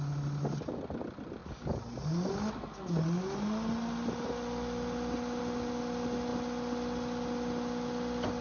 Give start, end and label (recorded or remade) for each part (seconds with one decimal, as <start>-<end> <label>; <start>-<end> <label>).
0.0-8.4 recorded